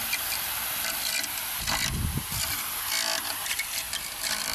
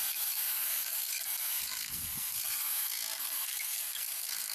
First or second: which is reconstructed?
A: second